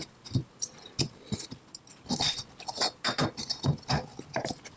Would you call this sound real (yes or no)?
yes